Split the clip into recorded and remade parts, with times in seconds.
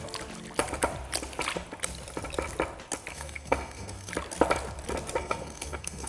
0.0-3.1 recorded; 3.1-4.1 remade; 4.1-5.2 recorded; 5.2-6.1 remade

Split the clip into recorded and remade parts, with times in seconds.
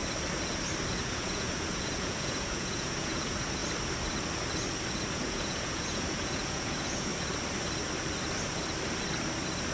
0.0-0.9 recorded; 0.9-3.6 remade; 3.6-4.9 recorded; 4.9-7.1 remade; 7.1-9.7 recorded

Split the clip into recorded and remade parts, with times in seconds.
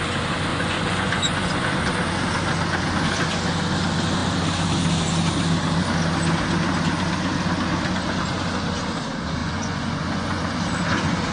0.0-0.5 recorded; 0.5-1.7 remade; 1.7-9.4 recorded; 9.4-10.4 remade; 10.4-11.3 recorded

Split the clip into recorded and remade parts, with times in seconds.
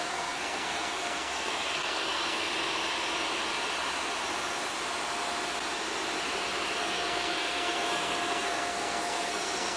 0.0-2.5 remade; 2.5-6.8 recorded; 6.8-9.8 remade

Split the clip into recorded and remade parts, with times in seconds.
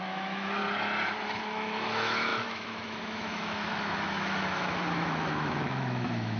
0.0-0.6 remade; 0.6-1.4 recorded; 1.4-6.4 remade